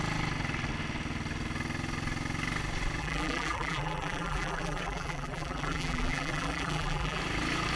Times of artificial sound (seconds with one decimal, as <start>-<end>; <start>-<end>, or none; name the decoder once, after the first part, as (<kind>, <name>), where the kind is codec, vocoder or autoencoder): 3.0-7.2 (vocoder, BigVGAN v2)